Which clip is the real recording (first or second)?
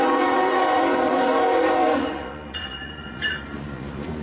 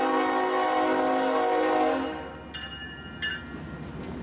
second